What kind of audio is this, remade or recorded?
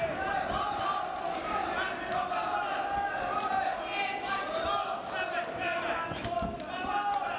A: recorded